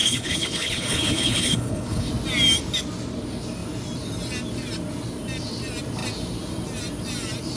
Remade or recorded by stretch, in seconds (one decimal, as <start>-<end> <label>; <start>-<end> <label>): 0.0-2.1 remade; 2.1-7.6 recorded